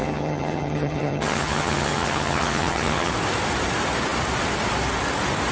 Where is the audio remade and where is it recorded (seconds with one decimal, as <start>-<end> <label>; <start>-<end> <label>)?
0.0-3.1 remade; 3.1-5.5 recorded